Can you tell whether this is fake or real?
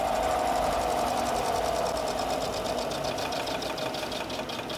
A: real